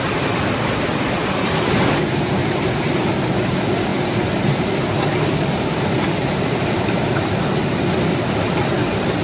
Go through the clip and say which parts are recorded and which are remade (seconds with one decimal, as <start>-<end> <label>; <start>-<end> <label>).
0.0-2.4 recorded; 2.4-3.0 remade; 3.0-3.9 recorded; 3.9-7.1 remade; 7.1-9.2 recorded